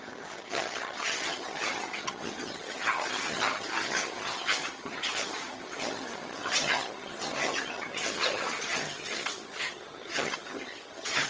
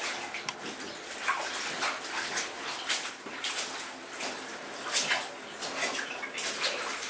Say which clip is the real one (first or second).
second